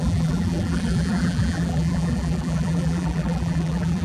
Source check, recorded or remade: remade